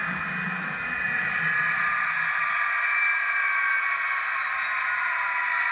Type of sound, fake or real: real